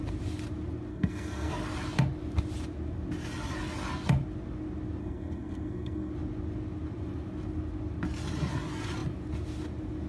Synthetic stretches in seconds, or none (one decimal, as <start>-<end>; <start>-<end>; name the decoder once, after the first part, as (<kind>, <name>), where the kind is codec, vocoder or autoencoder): 0.9-1.5 (codec, SNAC); 5.0-6.1